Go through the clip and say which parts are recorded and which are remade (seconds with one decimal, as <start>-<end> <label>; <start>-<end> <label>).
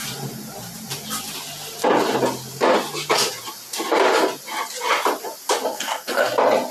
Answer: 0.0-5.7 recorded; 5.7-6.3 remade; 6.3-6.7 recorded